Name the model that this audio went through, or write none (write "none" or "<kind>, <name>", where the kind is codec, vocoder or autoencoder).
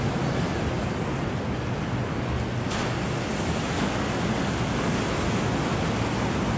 none